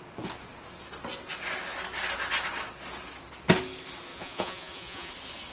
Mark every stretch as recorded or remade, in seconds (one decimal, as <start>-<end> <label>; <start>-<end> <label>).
0.0-4.1 recorded; 4.1-5.1 remade; 5.1-5.5 recorded